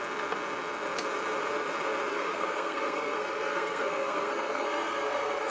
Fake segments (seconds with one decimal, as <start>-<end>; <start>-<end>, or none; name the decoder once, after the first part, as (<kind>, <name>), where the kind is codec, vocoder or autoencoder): 2.1-5.5 (codec, SNAC)